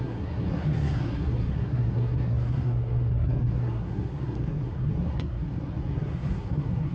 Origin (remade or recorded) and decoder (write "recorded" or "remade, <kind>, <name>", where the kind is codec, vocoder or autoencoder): remade, codec, SNAC